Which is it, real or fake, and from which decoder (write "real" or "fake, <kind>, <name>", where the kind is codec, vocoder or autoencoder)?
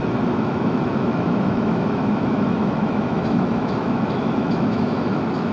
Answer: fake, autoencoder, DAC-VAE